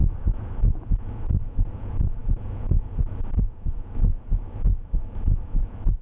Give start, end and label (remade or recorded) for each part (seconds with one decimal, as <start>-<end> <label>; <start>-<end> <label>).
0.0-6.0 remade